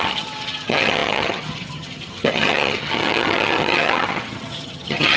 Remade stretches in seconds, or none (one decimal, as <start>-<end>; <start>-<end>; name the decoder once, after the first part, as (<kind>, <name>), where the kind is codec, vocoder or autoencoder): 0.0-5.2 (vocoder, HiFi-GAN)